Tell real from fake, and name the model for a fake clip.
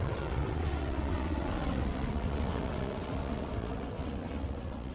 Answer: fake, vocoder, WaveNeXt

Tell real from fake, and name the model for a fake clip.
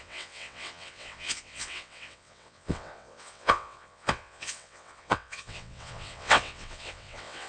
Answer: fake, vocoder, WaveNeXt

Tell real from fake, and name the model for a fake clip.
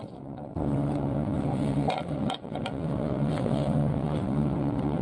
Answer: fake, vocoder, WaveNeXt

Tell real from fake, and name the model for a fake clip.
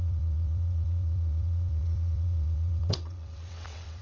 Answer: fake, vocoder, WaveNeXt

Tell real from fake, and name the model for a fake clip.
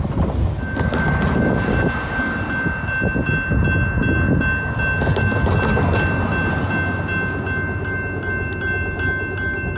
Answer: real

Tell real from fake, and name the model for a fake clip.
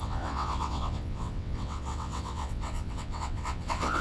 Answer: fake, vocoder, WaveNeXt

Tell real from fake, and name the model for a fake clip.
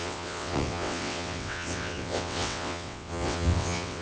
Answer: fake, vocoder, WaveNeXt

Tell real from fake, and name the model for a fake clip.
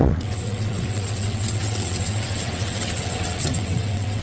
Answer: fake, vocoder, WaveNeXt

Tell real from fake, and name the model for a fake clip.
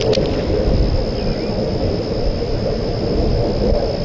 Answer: real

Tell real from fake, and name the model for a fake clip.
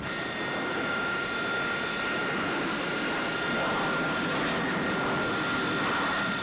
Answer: real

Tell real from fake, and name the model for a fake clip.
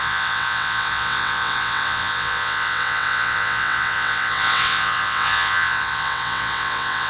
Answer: fake, vocoder, WaveNeXt